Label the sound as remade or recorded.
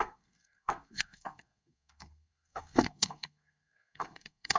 remade